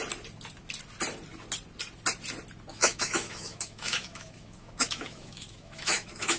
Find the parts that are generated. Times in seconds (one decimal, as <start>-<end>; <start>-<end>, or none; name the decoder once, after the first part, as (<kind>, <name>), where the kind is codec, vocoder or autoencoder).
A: 2.7-6.4 (autoencoder, DAC-VAE)